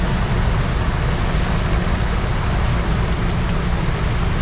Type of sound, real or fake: real